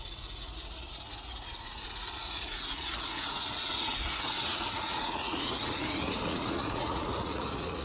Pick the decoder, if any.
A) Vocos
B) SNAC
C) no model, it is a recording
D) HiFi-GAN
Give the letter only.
A